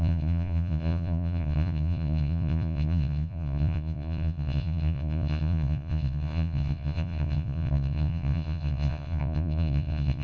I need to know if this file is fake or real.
fake